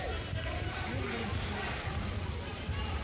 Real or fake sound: real